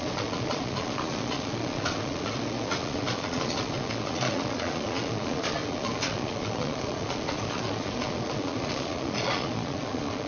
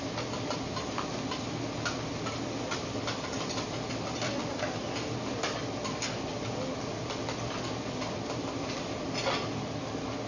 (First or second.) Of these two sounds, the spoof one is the first